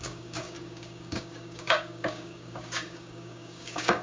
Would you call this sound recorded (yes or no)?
no